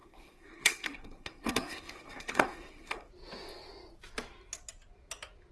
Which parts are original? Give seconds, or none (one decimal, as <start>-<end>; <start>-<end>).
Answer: 3.1-5.5